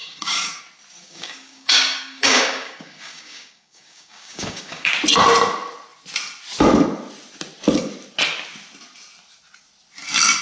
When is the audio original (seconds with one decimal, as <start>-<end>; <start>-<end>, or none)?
0.6-1.0; 4.9-10.4